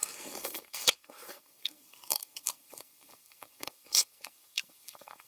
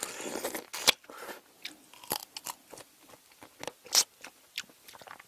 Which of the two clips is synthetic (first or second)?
first